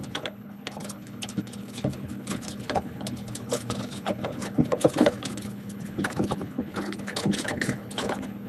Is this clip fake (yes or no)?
yes